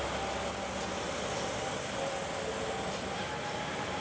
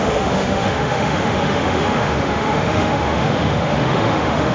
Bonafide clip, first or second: first